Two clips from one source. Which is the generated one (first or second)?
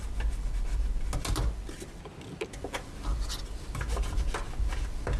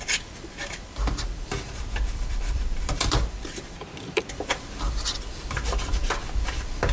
second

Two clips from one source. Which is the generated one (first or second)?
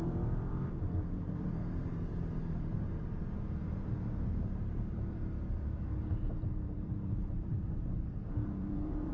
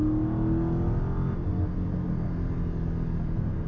first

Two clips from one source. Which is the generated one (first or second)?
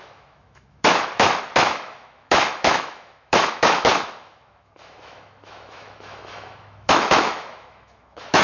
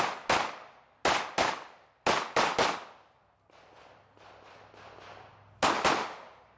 first